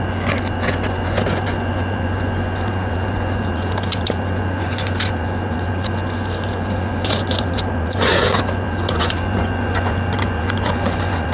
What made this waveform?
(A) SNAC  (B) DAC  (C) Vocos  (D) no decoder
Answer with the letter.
C